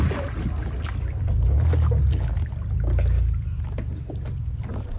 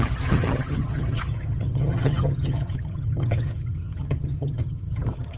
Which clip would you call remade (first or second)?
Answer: second